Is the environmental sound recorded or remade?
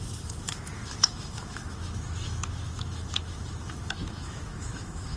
remade